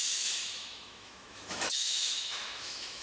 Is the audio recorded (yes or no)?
no